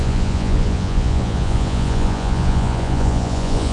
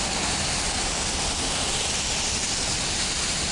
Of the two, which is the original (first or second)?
second